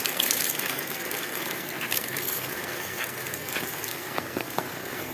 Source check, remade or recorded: remade